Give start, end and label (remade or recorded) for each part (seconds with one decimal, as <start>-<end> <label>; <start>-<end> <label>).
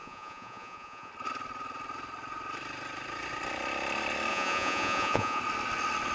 0.0-1.1 remade; 1.1-4.3 recorded; 4.3-5.4 remade; 5.4-6.1 recorded